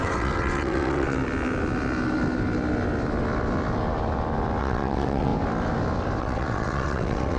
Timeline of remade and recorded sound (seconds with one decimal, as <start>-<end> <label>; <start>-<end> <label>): 0.0-1.2 remade; 1.2-4.6 recorded; 4.6-5.3 remade; 5.3-6.2 recorded; 6.2-7.4 remade